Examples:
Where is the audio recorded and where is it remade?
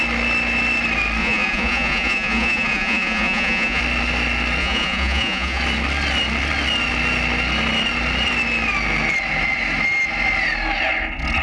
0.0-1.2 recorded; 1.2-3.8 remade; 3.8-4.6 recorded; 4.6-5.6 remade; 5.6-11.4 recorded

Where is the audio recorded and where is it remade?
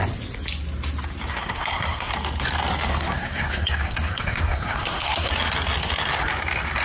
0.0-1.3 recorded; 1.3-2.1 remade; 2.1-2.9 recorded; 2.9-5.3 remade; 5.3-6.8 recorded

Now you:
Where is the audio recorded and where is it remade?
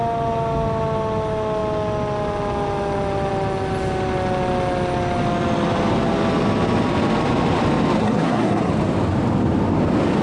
0.0-8.0 recorded; 8.0-8.7 remade; 8.7-10.2 recorded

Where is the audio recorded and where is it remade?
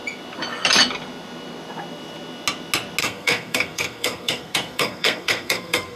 0.0-3.0 recorded; 3.0-6.0 remade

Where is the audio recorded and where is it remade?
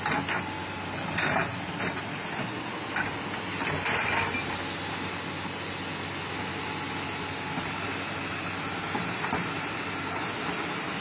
0.0-11.0 recorded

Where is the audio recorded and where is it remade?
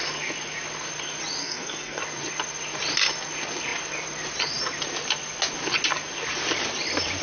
0.0-1.4 recorded; 1.4-2.0 remade; 2.0-7.2 recorded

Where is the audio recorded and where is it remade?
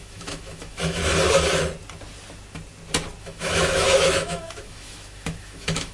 0.0-1.0 remade; 1.0-3.2 recorded; 3.2-5.9 remade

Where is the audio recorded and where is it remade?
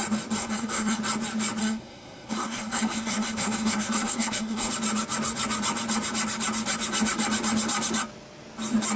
0.0-0.4 recorded; 0.4-1.0 remade; 1.0-1.6 recorded; 1.6-4.7 remade; 4.7-9.0 recorded